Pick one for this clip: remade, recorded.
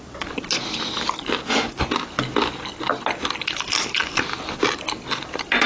recorded